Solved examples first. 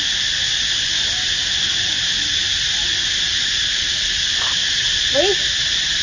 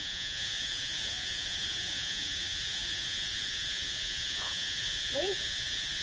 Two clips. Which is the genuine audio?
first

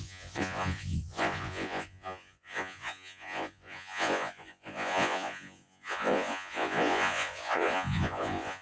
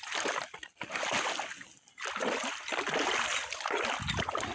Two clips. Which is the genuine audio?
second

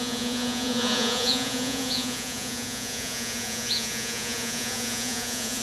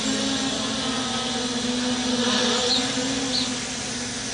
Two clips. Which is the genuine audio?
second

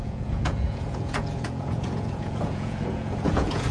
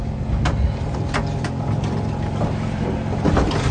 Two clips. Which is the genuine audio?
second